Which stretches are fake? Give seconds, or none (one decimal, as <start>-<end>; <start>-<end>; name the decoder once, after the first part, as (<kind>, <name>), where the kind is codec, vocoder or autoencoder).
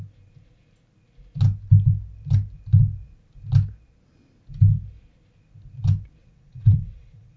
6.2-7.4 (vocoder, WaveNeXt)